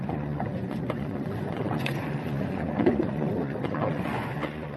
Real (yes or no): no